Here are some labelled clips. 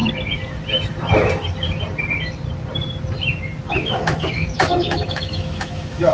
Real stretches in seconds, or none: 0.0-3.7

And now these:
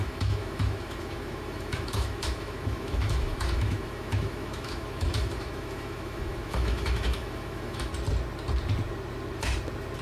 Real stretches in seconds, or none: 7.9-10.0